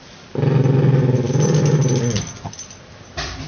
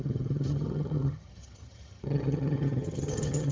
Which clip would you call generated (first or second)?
second